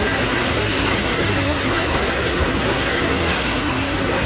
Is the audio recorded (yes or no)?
no